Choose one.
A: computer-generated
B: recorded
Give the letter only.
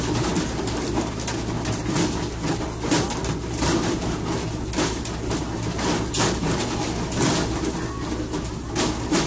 B